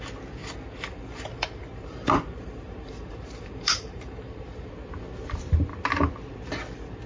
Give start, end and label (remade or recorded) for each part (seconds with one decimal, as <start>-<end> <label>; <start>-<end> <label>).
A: 0.0-0.4 recorded; 0.4-4.7 remade; 4.7-7.1 recorded